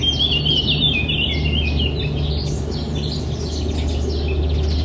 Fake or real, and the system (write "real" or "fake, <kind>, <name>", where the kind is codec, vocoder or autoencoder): real